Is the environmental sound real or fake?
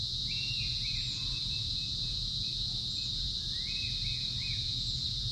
fake